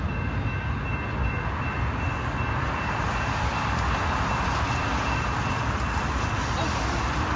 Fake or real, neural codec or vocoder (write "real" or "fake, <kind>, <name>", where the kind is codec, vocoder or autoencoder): real